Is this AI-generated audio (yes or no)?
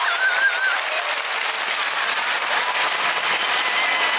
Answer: no